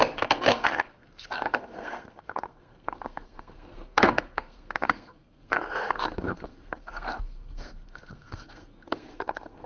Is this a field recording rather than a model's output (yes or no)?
no